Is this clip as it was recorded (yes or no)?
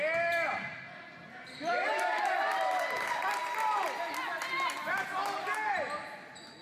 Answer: yes